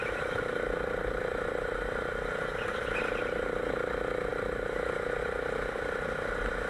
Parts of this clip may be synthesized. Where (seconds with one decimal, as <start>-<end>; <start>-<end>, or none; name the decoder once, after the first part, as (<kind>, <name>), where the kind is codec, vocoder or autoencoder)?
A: 0.0-6.7 (vocoder, BigVGAN v2)